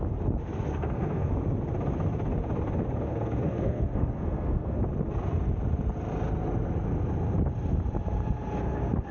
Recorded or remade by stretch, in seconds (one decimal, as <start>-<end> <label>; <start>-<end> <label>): 0.0-0.7 recorded; 0.7-1.3 remade; 1.3-3.1 recorded; 3.1-4.8 remade; 4.8-9.1 recorded